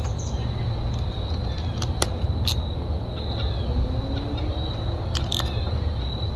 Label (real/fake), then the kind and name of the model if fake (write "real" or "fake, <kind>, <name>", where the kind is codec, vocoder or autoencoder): real